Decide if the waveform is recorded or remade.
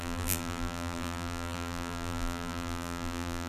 remade